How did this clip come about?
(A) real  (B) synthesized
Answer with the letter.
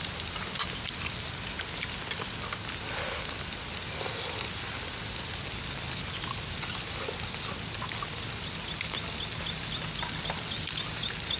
A